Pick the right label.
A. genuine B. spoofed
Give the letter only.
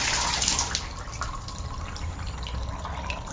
A